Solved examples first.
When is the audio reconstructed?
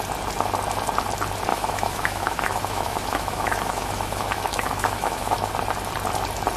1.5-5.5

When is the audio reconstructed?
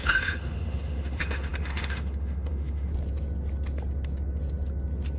0.0-2.9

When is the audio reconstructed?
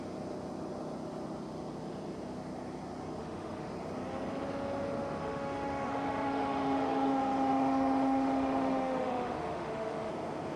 3.2-3.7; 5.2-10.1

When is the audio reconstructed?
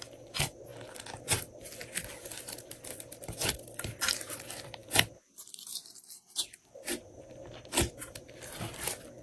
none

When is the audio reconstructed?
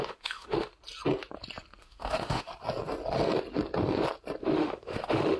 0.0-0.7; 1.8-2.5; 4.4-5.4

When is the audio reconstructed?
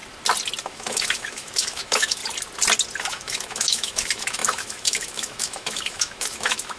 0.6-2.2; 3.0-6.8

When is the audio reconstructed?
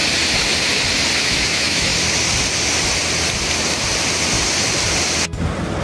1.2-1.9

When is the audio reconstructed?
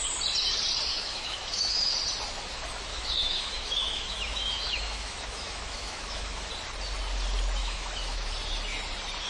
0.9-1.9; 2.9-6.5; 7.6-8.3